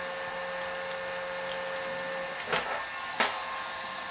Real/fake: real